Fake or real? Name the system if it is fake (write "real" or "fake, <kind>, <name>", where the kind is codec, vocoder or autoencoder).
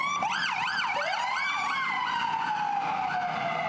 fake, vocoder, BigVGAN v2